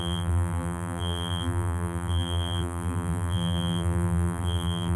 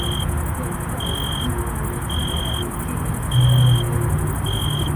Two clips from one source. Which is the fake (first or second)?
first